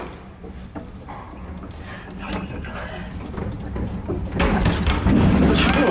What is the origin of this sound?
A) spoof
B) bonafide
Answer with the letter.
B